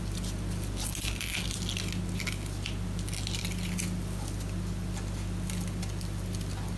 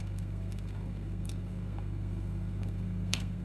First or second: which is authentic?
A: first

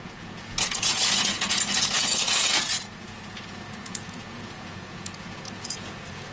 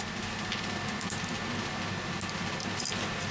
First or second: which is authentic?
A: second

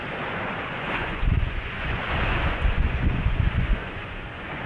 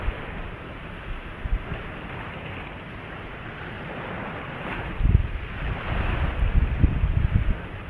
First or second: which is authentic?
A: second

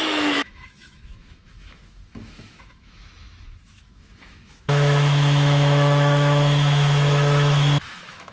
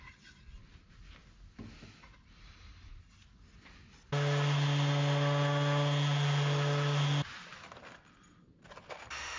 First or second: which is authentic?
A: second